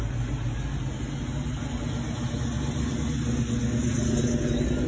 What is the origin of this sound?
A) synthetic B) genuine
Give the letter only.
B